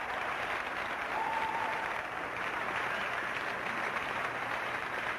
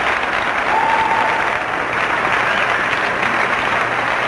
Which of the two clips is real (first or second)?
second